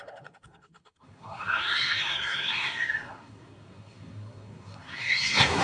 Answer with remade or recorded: remade